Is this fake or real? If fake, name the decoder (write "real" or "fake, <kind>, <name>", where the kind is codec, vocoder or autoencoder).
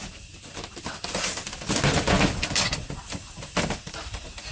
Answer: real